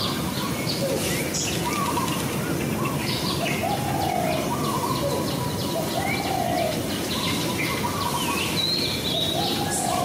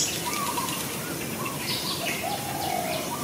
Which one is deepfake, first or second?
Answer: second